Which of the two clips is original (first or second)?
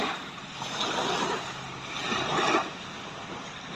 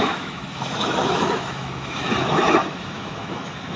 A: first